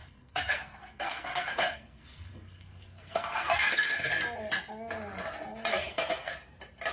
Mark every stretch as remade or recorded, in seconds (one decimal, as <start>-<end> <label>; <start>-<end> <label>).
0.0-4.1 remade; 4.1-5.7 recorded; 5.7-6.4 remade; 6.4-6.9 recorded

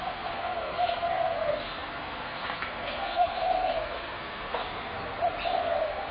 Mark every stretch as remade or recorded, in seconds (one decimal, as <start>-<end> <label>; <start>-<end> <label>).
0.0-5.1 remade; 5.1-5.6 recorded; 5.6-6.1 remade

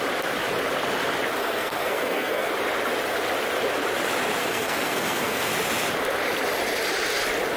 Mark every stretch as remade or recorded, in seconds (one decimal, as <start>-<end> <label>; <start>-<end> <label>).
0.0-1.4 recorded; 1.4-2.5 remade; 2.5-4.4 recorded; 4.4-5.5 remade; 5.5-7.6 recorded

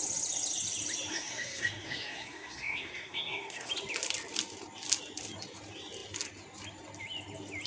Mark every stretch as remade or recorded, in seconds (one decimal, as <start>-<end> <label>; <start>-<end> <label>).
0.0-1.1 recorded; 1.1-3.7 remade; 3.7-7.7 recorded

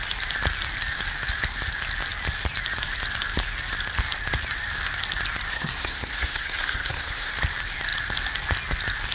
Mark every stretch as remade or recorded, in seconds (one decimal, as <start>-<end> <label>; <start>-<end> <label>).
0.0-5.5 recorded; 5.5-7.3 remade; 7.3-9.1 recorded

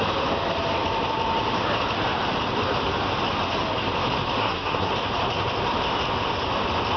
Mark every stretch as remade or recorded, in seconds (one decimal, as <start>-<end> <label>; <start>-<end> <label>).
0.0-4.4 recorded; 4.4-4.9 remade; 4.9-7.0 recorded

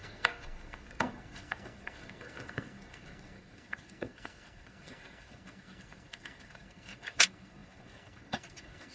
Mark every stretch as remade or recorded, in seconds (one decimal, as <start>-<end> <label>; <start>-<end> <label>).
0.0-8.9 remade